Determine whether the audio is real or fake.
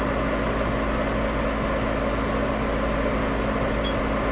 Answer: real